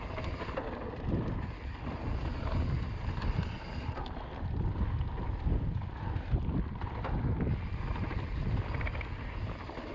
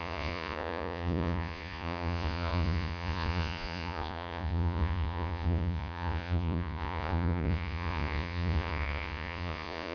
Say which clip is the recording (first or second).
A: first